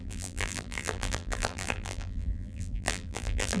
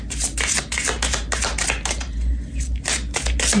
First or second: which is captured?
second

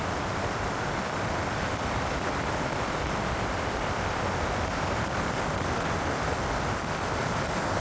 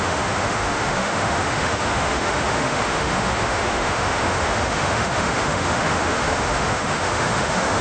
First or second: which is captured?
first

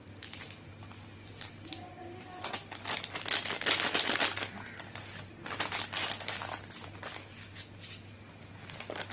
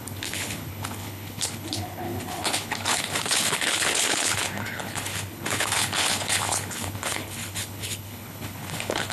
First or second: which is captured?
first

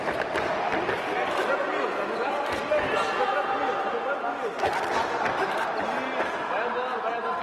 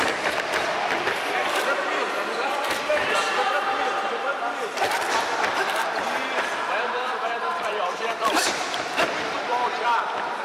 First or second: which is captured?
first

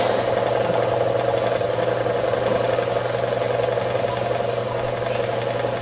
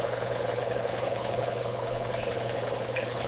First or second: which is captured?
first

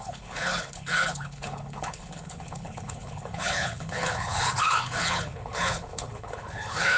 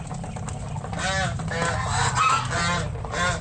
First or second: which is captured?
second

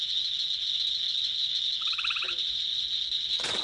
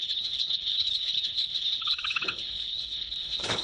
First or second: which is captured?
first